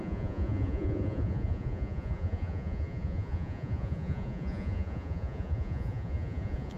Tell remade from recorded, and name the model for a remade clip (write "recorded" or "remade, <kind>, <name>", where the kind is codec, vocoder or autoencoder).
remade, vocoder, Vocos